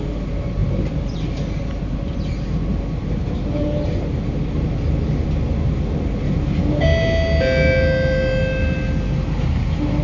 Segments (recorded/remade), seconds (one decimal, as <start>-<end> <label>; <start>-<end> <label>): 0.0-10.0 recorded